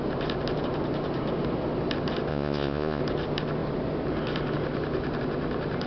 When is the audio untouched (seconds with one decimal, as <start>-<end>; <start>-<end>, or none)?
0.0-2.3; 3.0-5.9